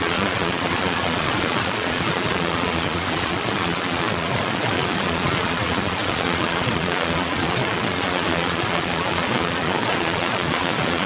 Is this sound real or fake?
fake